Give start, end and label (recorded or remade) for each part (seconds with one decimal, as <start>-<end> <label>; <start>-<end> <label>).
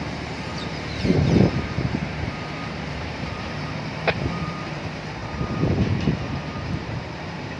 0.0-7.6 remade